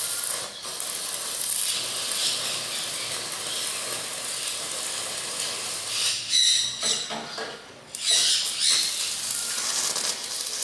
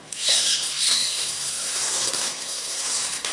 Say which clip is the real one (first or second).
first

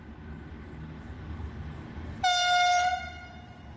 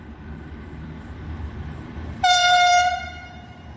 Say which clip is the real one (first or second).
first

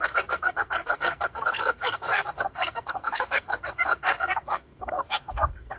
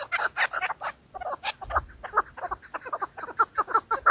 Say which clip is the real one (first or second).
second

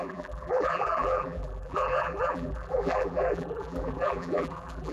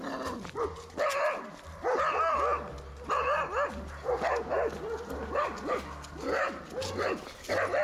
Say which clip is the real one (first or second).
second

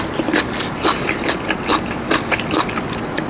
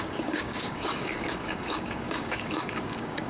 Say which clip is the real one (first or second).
first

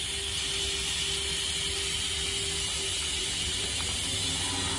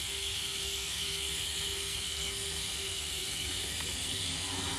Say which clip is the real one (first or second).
first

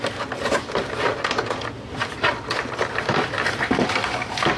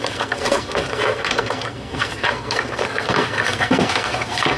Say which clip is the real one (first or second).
first